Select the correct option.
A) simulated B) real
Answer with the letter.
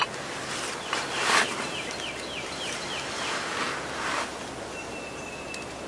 B